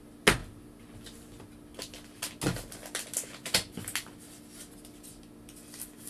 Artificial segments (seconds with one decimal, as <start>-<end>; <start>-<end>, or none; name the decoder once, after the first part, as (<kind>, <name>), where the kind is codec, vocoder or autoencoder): none

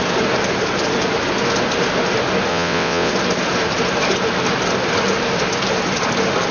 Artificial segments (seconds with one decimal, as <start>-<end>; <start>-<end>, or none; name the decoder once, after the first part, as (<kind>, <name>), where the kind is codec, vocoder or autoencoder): 2.5-3.1 (vocoder, WaveNeXt)

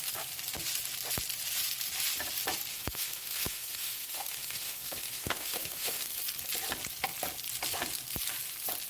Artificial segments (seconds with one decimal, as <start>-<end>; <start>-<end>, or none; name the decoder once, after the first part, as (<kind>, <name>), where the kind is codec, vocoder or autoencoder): 2.7-6.2 (autoencoder, DAC-VAE)